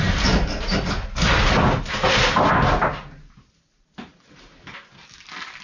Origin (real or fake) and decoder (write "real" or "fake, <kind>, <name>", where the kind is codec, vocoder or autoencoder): real